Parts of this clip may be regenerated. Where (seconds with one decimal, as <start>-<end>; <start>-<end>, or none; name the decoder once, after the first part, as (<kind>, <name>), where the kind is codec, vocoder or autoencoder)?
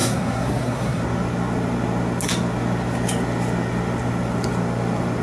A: 0.0-1.0 (codec, SNAC)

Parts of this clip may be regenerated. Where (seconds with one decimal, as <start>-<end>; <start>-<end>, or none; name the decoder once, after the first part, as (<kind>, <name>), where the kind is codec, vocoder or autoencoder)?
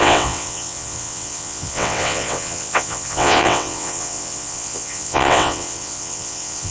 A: 0.0-6.7 (vocoder, WaveNeXt)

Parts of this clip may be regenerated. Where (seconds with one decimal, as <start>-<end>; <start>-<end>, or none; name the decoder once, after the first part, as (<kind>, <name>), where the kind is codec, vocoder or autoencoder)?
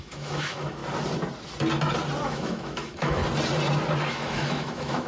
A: 0.0-0.8 (autoencoder, DAC-VAE); 2.2-3.2; 4.1-5.1